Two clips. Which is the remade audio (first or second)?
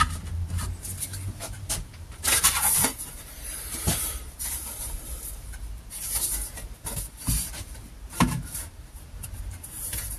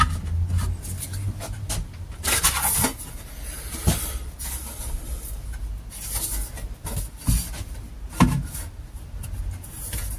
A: first